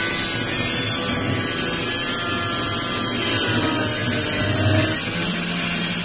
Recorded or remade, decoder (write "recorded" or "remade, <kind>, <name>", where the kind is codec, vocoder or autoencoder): recorded